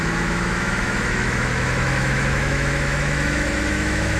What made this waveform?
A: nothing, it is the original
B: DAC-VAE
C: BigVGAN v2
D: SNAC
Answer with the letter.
B